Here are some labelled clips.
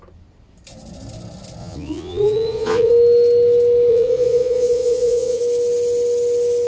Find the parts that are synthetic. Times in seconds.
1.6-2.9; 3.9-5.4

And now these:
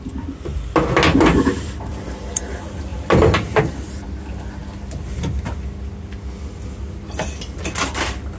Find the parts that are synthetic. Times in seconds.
none

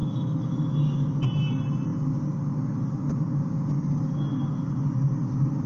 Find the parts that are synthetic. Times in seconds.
0.0-0.8

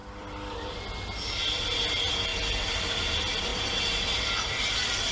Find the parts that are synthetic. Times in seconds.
0.0-2.3; 2.8-3.5; 4.5-5.1

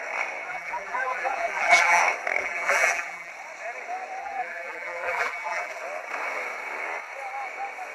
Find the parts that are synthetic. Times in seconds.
0.5-2.0; 2.4-3.3; 4.2-5.8

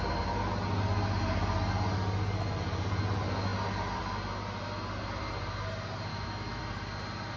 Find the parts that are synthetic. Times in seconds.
6.1-6.6

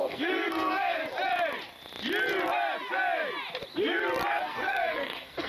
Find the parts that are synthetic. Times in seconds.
0.0-1.0; 4.3-5.5

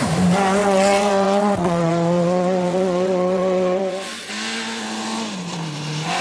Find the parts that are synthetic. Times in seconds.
0.6-4.3